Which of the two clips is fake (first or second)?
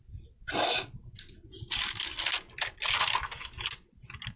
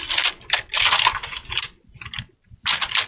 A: second